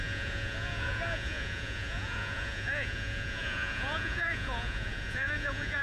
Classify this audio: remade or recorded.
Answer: remade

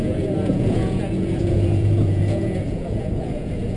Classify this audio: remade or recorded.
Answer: remade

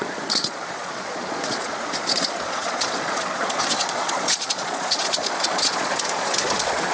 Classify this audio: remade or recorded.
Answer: remade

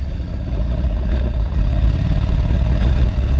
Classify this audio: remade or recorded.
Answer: remade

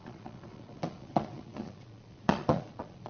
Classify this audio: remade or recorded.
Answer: remade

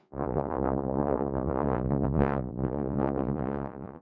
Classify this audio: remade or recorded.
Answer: remade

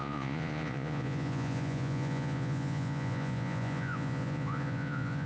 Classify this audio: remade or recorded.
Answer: remade